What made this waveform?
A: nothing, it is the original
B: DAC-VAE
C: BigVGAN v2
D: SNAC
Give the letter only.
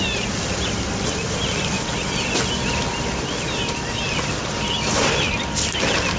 A